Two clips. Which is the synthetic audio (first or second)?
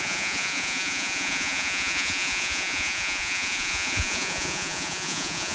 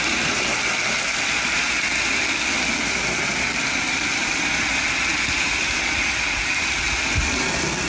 first